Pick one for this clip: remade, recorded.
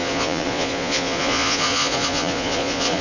remade